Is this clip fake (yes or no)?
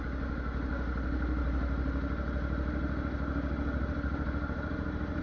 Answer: no